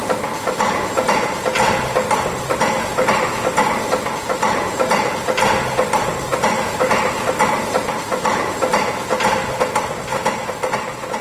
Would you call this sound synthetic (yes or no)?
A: no